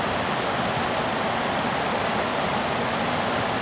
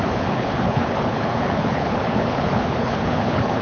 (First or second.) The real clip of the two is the first